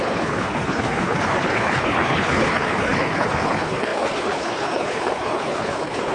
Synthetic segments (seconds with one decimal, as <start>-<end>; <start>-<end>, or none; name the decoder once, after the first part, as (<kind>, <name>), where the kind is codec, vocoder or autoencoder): 0.0-6.1 (codec, HILCodec)